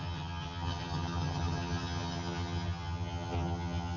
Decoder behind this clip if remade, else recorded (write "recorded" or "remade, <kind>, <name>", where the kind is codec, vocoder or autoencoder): remade, vocoder, HiFi-GAN